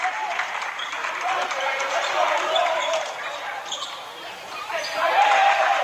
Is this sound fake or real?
fake